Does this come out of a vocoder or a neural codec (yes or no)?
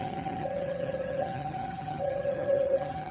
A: yes